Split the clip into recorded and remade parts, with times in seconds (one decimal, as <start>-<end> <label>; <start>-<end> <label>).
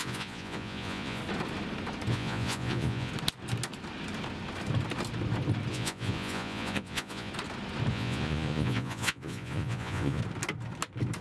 0.0-1.2 remade; 1.2-2.1 recorded; 2.1-3.1 remade; 3.1-5.7 recorded; 5.7-7.3 remade; 7.3-7.9 recorded; 7.9-10.2 remade; 10.2-11.2 recorded